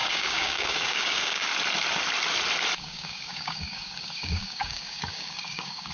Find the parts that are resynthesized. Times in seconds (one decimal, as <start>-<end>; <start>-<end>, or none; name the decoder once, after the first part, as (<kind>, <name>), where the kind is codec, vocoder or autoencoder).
0.0-1.5 (codec, DAC); 2.8-5.9